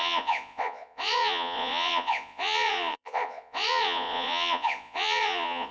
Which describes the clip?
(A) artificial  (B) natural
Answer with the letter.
A